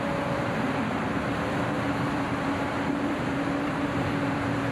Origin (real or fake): fake